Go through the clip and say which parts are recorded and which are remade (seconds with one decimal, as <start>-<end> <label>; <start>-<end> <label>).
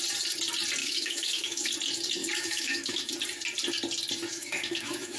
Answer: 0.0-0.8 recorded; 0.8-1.7 remade; 1.7-2.2 recorded; 2.2-3.1 remade; 3.1-4.3 recorded; 4.3-5.2 remade